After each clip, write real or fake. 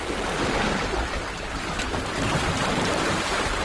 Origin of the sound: real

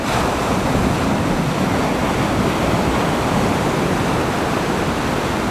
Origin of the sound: real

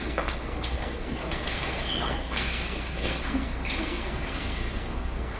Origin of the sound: fake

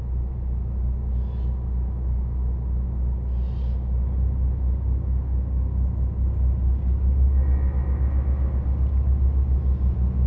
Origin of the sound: real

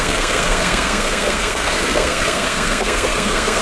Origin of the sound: fake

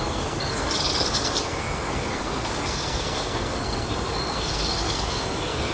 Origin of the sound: fake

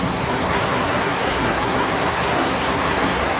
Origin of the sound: fake